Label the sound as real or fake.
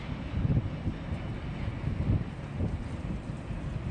real